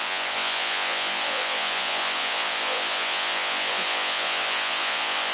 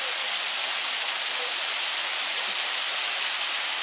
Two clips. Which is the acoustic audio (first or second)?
second